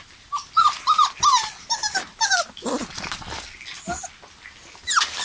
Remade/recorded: recorded